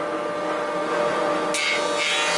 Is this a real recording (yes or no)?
yes